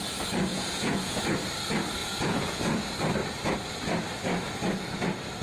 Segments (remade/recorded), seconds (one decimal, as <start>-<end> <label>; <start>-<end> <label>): 0.0-0.5 recorded; 0.5-1.2 remade; 1.2-2.0 recorded; 2.0-2.8 remade; 2.8-5.4 recorded